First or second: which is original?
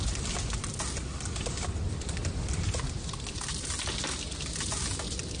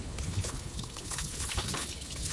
first